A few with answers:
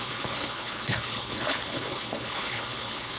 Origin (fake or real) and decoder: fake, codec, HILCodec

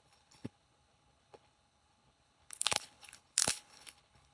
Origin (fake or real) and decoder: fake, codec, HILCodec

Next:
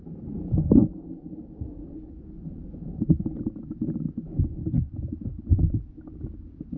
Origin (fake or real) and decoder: real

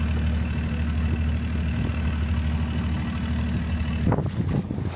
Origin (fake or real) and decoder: real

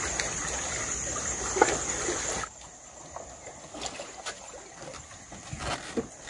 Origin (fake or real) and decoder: real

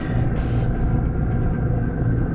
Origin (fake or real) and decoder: real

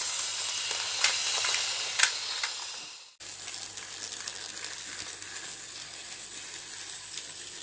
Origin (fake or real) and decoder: real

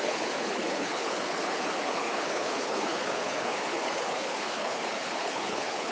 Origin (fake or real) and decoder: fake, codec, HILCodec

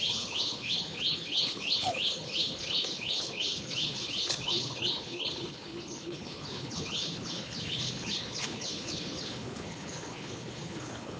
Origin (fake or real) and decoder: fake, codec, HILCodec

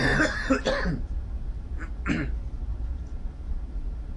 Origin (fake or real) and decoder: real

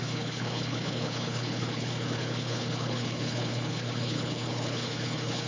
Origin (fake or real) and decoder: fake, codec, HILCodec